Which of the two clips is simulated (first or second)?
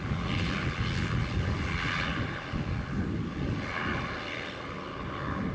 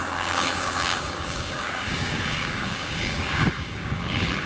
second